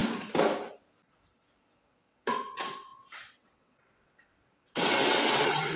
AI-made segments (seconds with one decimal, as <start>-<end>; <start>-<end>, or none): 2.1-5.8

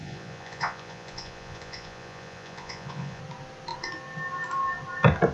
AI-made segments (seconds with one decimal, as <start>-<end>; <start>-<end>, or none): 0.0-3.2

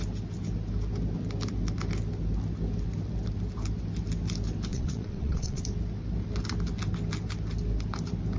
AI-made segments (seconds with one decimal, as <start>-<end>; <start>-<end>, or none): 4.7-5.6

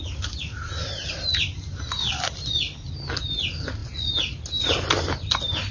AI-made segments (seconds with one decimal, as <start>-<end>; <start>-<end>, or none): none

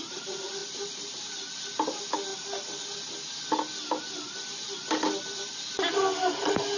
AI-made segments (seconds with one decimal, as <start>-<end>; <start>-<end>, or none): none